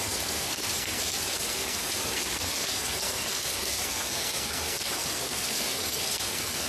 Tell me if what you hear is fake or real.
fake